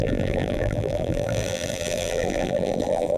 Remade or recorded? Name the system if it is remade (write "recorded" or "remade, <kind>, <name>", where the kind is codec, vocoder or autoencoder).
remade, vocoder, BigVGAN v2